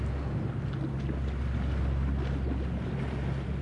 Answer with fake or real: real